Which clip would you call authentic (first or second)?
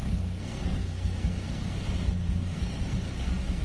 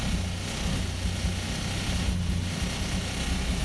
second